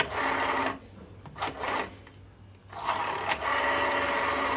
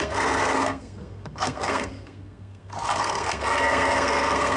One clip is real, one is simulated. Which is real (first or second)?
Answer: first